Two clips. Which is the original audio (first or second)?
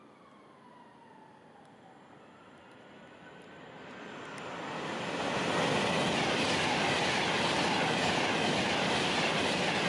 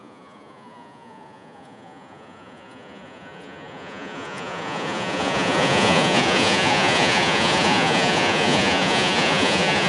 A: first